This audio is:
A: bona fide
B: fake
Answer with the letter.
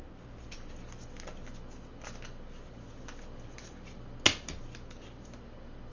A